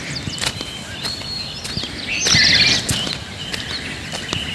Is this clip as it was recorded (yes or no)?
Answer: yes